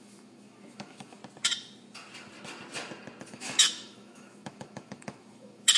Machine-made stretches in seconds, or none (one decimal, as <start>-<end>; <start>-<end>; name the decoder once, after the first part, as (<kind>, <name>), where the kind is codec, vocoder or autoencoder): 0.0-1.2 (autoencoder, DAC-VAE); 3.3-5.8